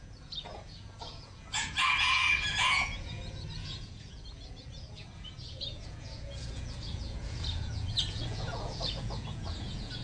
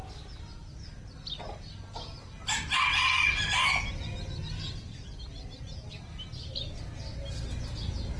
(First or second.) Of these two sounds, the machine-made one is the first